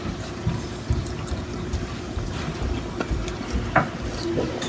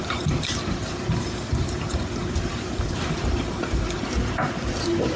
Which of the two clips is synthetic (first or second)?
second